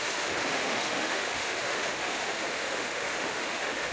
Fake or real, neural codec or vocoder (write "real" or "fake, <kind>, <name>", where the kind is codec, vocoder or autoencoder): fake, autoencoder, DAC-VAE